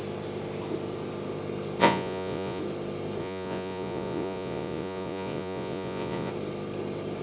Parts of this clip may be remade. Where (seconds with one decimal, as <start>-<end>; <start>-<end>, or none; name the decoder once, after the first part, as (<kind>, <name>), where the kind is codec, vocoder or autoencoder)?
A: 1.8-2.6 (vocoder, Vocos); 3.2-6.3